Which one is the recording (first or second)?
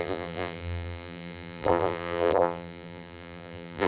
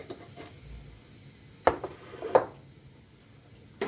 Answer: second